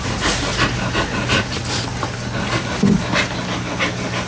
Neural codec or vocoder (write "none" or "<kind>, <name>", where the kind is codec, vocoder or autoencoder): none